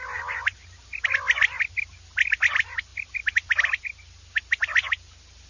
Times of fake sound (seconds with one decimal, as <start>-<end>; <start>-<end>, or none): none